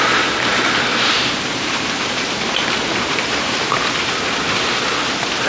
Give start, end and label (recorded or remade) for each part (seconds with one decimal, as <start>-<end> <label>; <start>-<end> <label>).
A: 0.0-0.9 recorded; 0.9-4.1 remade; 4.1-5.5 recorded